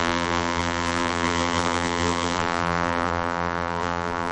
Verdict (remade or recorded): remade